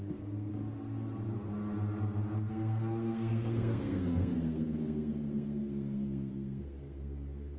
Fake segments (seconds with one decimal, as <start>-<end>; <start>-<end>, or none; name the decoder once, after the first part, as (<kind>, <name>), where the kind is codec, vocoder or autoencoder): 0.0-0.5 (codec, SNAC); 2.5-7.6